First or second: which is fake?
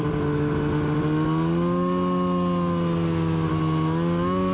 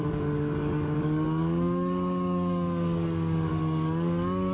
second